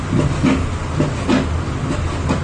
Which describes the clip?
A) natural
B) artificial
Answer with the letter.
A